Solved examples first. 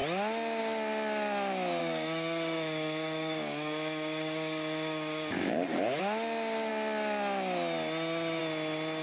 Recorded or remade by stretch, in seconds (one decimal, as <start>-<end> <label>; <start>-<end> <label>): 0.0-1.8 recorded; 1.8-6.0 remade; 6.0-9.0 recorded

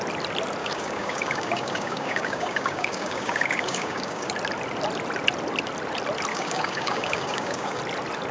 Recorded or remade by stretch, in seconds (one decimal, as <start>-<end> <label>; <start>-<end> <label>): 0.0-0.6 recorded; 0.6-4.3 remade; 4.3-6.3 recorded; 6.3-7.8 remade; 7.8-8.3 recorded

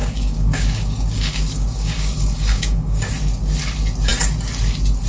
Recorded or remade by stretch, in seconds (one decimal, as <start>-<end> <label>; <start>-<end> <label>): 0.0-3.1 remade; 3.1-5.1 recorded

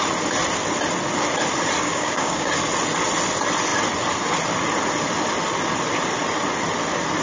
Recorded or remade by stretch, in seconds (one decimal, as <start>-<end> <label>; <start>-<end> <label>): 0.0-1.8 recorded; 1.8-2.5 remade; 2.5-7.2 recorded